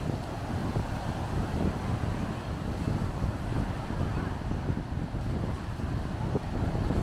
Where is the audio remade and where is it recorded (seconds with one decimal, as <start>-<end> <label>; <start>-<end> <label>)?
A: 0.0-7.0 recorded